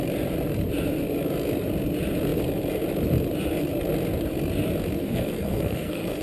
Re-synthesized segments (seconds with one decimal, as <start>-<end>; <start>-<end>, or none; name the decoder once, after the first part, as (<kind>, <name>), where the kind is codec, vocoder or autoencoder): 5.0-6.2 (codec, SNAC)